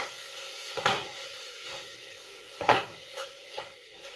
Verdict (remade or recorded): remade